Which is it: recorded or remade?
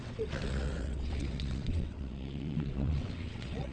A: remade